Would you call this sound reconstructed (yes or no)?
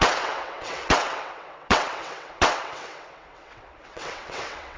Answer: yes